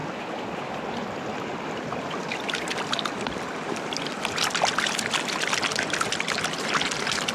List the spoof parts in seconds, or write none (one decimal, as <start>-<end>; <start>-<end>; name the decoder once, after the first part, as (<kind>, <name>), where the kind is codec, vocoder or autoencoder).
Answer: none